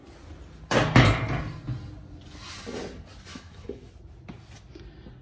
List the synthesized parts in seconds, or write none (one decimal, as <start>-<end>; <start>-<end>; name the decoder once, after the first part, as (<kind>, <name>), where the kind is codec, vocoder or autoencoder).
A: 3.3-3.9 (autoencoder, DAC-VAE)